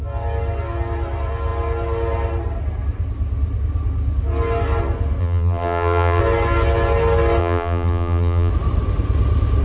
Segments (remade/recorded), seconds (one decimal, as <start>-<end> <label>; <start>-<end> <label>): 0.0-5.2 recorded; 5.2-6.2 remade; 6.2-7.4 recorded; 7.4-8.5 remade; 8.5-9.6 recorded